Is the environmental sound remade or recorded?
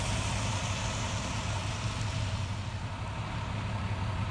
recorded